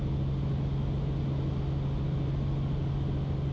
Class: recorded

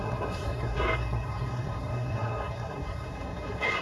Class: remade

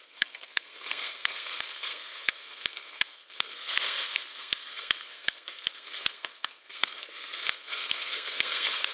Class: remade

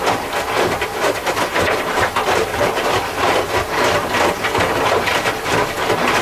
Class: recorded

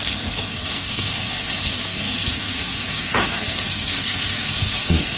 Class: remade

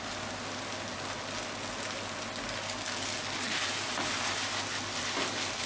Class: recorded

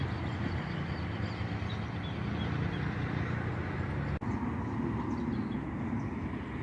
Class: recorded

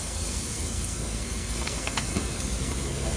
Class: remade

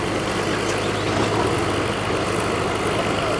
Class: recorded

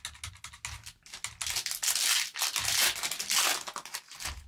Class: recorded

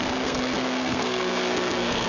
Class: remade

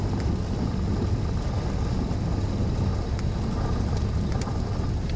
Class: recorded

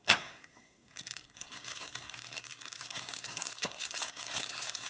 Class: remade